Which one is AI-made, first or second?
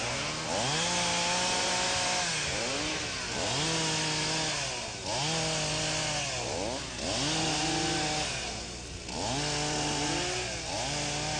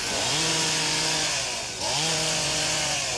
second